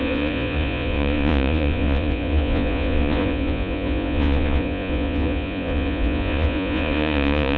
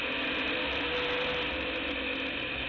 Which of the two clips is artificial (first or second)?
first